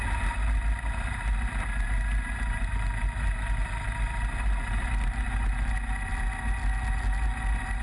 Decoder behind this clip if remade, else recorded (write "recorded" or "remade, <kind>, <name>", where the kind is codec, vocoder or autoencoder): recorded